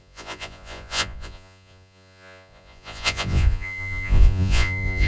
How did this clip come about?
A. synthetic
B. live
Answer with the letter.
A